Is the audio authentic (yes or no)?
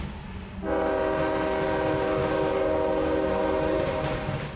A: yes